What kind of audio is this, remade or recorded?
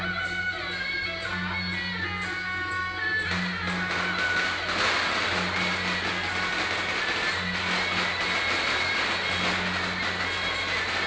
recorded